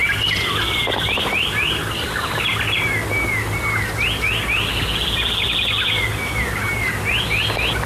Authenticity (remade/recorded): recorded